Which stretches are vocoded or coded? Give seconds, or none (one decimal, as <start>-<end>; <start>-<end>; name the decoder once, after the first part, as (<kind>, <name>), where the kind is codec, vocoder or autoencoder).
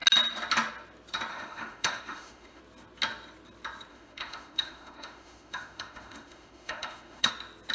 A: 1.3-2.6 (autoencoder, DAC-VAE); 3.9-7.3